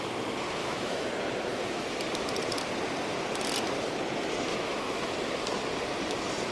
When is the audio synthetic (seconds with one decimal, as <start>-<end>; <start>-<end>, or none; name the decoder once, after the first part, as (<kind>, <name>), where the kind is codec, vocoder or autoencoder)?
0.6-1.1 (autoencoder, DAC-VAE); 1.5-2.0; 4.5-5.1